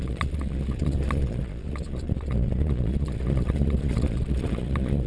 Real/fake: fake